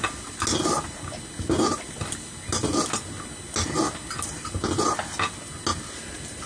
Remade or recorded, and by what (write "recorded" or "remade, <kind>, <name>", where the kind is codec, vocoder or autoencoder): recorded